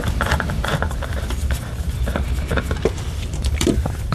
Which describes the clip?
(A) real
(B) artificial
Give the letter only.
B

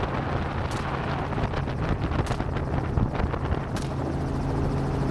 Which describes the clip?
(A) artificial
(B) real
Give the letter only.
B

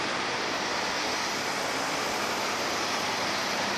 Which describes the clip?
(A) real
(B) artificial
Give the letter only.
A